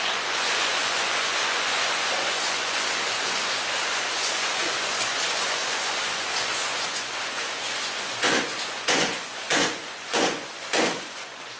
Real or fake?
fake